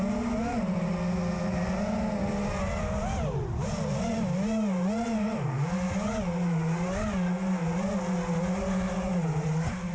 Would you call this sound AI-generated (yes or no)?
no